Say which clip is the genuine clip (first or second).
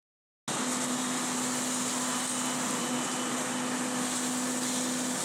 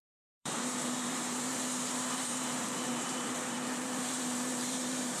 first